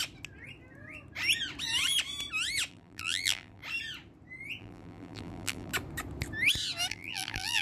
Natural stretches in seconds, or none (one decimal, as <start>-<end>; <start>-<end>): 0.0-2.7; 3.6-4.6; 5.7-6.9